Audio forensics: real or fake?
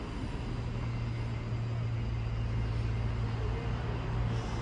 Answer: real